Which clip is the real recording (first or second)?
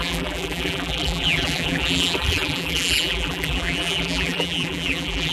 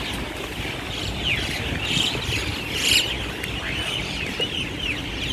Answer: second